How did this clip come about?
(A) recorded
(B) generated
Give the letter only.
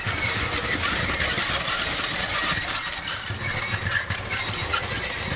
A